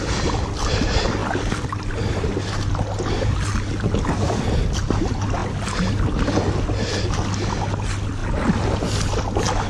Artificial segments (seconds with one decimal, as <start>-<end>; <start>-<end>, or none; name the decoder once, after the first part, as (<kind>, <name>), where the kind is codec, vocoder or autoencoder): none